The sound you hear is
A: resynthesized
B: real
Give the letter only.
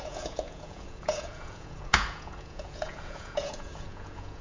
A